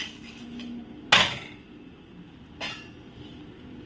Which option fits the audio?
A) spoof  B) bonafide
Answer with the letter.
B